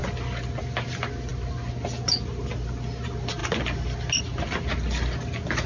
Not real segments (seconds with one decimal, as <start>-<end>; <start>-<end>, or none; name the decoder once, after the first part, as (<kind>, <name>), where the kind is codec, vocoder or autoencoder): none